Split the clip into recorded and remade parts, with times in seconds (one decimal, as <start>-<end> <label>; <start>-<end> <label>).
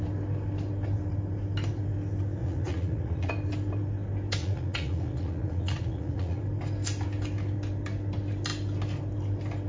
0.0-2.4 recorded; 2.4-3.3 remade; 3.3-4.4 recorded; 4.4-6.4 remade; 6.4-9.7 recorded